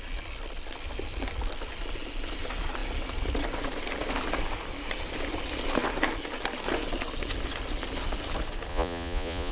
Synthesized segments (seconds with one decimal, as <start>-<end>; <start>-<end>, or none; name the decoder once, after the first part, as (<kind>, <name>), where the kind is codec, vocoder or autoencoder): 8.7-9.5 (vocoder, Vocos)